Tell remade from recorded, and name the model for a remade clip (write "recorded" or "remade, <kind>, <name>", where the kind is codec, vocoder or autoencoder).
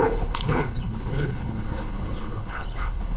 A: remade, codec, HILCodec